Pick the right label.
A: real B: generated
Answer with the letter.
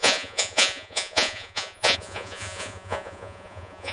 B